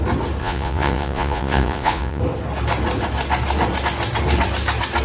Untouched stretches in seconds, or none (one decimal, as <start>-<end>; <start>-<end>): 0.0-0.4; 2.2-5.0